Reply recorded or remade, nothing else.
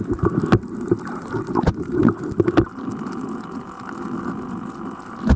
recorded